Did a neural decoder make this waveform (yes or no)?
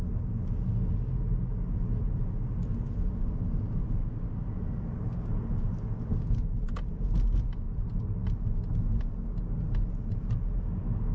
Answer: no